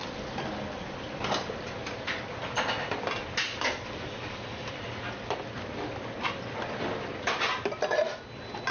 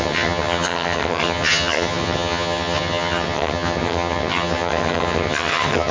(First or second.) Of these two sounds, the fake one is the second